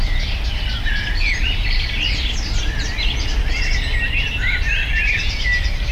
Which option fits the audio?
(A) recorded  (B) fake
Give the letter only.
A